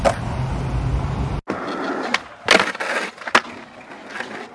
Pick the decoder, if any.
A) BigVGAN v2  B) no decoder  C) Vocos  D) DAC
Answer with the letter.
B